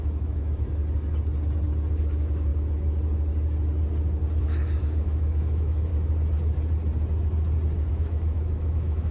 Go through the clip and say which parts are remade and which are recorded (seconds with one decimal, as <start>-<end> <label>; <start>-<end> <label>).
0.0-0.8 remade; 0.8-2.0 recorded; 2.0-2.5 remade; 2.5-4.4 recorded; 4.4-5.9 remade; 5.9-7.9 recorded; 7.9-9.1 remade